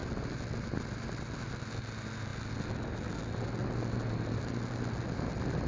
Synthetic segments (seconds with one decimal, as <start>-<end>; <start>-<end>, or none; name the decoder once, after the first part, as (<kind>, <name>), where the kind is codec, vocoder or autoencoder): none